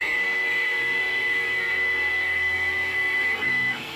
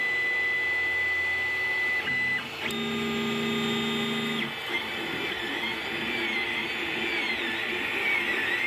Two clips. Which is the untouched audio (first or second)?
second